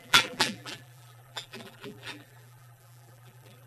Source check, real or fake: fake